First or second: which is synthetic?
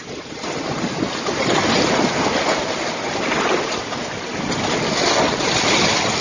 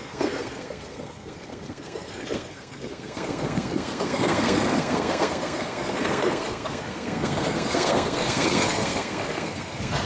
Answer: second